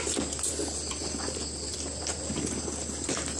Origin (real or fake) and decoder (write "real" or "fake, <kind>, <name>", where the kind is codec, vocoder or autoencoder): real